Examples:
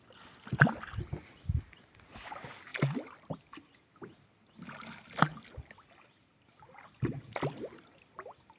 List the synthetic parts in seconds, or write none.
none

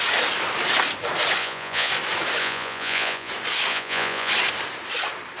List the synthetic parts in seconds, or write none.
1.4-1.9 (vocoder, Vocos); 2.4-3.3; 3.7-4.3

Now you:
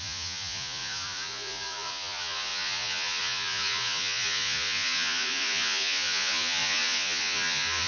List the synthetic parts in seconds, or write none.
0.0-7.9 (vocoder, Vocos)

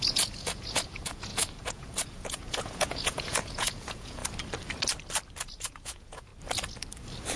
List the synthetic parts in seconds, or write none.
0.0-4.2 (vocoder, Vocos); 5.4-6.3

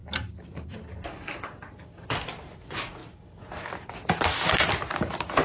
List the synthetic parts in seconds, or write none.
none

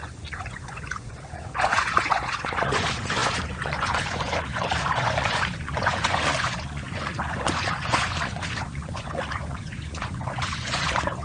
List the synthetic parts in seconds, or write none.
0.0-11.2 (vocoder, Vocos)

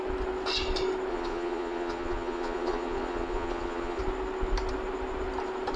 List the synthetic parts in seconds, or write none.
1.1-4.0 (vocoder, Vocos)